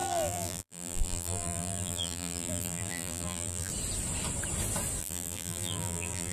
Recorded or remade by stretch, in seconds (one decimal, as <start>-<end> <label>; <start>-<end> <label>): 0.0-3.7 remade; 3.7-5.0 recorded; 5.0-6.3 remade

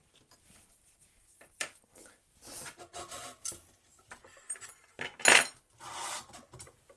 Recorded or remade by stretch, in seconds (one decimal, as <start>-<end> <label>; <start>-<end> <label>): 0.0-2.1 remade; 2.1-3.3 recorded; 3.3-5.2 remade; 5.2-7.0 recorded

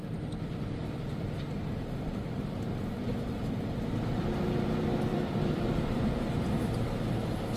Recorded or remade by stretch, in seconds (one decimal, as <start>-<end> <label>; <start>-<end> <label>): 0.0-5.1 recorded; 5.1-6.7 remade; 6.7-7.6 recorded

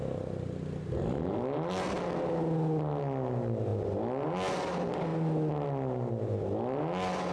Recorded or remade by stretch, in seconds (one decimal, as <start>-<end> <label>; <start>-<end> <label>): 0.0-7.3 recorded

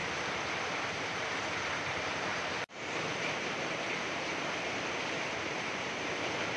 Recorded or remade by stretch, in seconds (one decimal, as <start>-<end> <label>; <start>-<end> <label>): 0.0-0.6 recorded; 0.6-6.6 remade